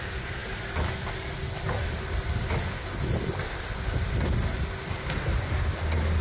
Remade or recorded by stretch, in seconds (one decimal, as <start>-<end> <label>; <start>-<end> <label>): 0.0-6.2 recorded